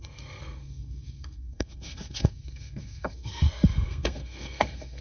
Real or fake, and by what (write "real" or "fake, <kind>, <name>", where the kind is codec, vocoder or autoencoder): fake, codec, SNAC